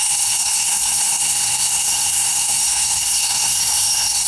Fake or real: fake